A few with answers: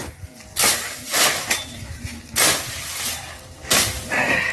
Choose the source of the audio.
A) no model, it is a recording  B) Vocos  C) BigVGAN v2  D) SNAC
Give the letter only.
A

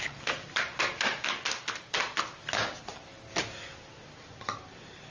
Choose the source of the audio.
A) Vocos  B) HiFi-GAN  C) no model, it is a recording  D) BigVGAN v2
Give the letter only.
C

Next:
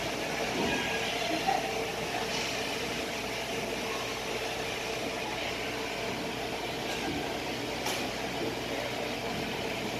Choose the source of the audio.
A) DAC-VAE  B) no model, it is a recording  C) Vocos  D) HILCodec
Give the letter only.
B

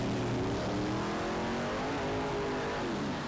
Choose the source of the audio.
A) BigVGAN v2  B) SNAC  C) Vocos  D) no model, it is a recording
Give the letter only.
D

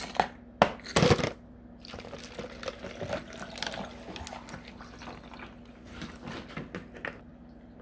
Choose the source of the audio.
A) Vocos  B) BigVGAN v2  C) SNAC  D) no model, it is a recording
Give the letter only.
D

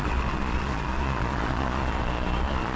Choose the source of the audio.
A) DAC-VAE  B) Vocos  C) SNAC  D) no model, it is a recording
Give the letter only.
B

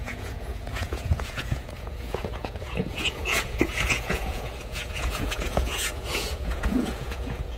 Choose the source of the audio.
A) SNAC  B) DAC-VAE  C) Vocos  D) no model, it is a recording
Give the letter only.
C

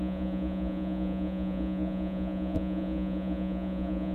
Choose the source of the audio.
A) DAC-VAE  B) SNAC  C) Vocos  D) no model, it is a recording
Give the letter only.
C